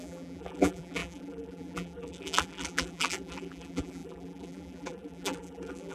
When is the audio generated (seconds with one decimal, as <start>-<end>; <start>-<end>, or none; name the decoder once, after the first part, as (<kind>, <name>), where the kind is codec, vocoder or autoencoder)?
0.0-5.9 (vocoder, BigVGAN v2)